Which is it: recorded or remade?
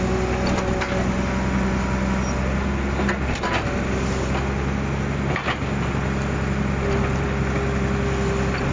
recorded